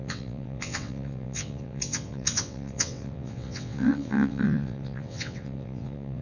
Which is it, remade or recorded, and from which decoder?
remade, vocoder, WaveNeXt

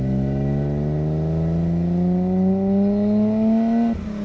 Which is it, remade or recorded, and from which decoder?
recorded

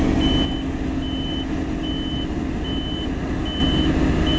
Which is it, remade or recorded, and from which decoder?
recorded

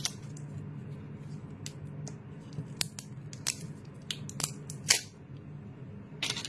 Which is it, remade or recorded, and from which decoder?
recorded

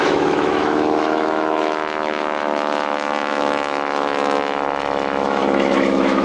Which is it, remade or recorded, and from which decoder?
remade, autoencoder, DAC-VAE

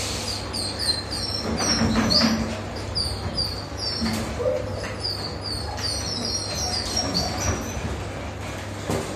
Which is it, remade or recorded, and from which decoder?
recorded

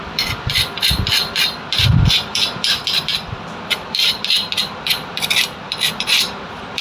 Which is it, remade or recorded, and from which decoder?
remade, vocoder, BigVGAN v2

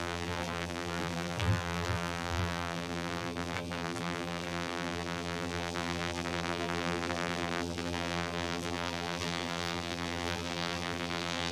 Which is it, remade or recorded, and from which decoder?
remade, vocoder, BigVGAN v2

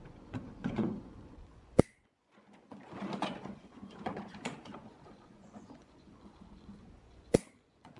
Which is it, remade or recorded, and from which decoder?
remade, vocoder, Vocos